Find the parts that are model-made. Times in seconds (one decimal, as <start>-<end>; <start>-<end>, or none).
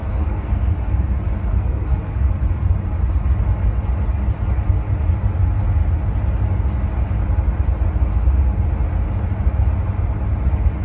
0.0-1.1; 1.5-2.3